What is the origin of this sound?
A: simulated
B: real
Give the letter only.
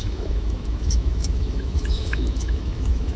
A